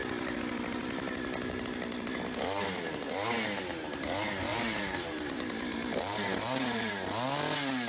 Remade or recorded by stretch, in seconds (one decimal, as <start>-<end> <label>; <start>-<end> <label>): 0.0-4.5 recorded; 4.5-6.9 remade; 6.9-7.9 recorded